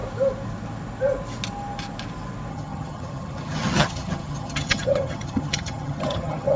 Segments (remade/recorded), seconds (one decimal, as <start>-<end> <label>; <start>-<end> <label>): 0.0-2.5 recorded; 2.5-6.6 remade